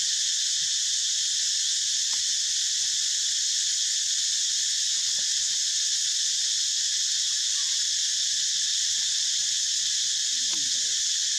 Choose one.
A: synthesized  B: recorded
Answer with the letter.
B